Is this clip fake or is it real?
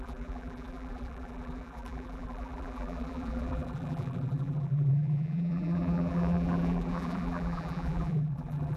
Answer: fake